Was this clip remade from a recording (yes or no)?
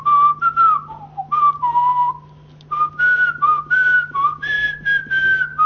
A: no